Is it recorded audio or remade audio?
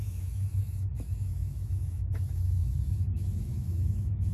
remade